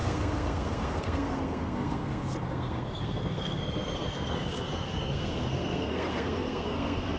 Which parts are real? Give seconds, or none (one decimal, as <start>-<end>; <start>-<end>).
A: none